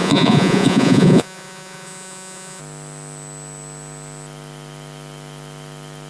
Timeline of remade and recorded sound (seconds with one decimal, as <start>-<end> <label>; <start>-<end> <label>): 0.0-2.6 remade; 2.6-6.1 recorded